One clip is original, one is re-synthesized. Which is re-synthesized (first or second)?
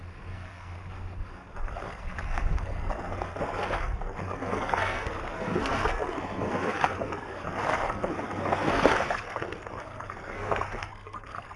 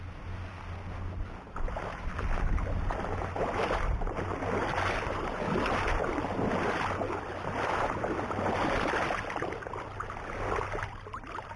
first